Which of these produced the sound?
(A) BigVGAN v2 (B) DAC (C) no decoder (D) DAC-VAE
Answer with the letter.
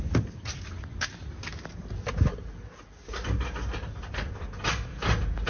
C